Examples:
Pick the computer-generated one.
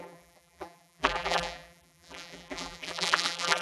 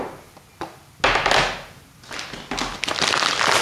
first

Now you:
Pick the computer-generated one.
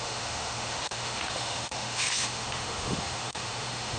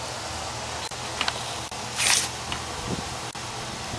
first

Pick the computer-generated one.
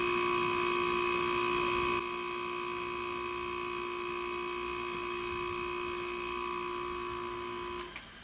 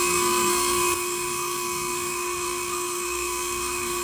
second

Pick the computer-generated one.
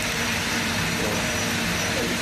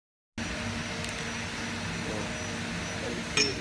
first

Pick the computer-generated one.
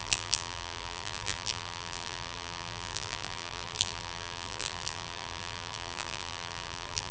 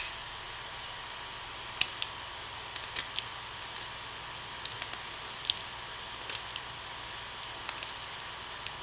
first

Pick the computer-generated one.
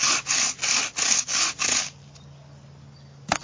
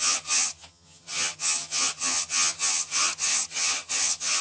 second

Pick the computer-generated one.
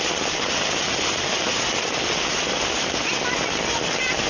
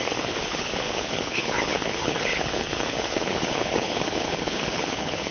second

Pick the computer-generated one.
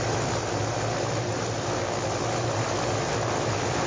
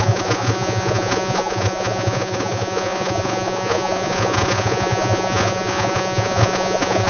second